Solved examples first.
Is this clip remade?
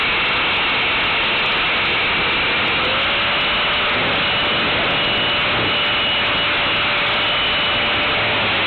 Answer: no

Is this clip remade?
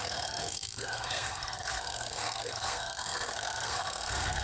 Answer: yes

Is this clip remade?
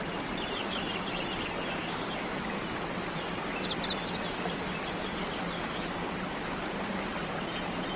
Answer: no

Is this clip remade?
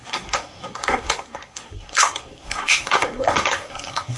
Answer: yes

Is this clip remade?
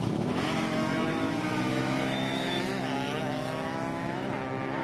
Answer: yes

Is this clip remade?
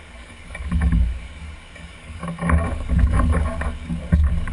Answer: yes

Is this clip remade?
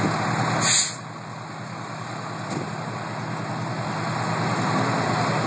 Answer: no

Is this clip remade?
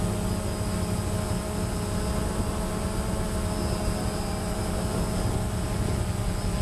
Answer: no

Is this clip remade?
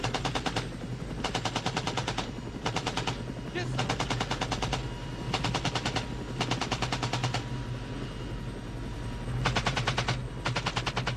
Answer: no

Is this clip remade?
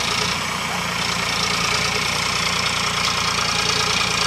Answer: no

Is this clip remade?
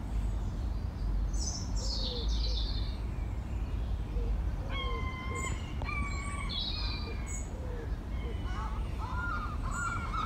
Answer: no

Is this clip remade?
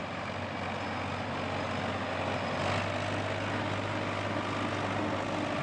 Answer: no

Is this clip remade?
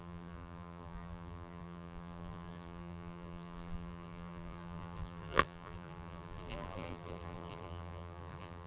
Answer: yes